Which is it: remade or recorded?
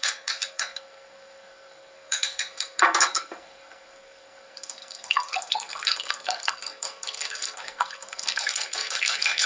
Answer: remade